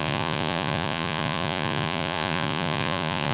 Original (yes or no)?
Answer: no